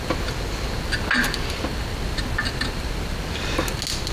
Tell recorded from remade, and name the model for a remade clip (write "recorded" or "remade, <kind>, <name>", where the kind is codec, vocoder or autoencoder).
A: recorded